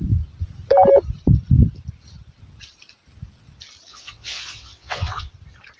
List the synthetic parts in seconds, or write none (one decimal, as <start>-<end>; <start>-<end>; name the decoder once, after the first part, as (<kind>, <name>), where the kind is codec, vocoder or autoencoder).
3.9-5.3 (vocoder, WaveNeXt)